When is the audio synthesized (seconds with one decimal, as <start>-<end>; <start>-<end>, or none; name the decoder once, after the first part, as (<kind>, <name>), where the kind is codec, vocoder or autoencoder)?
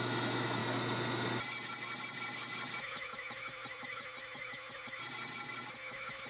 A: 0.0-0.6 (autoencoder, DAC-VAE); 2.8-5.0; 5.7-6.3